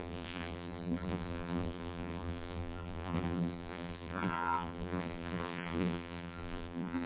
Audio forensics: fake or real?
fake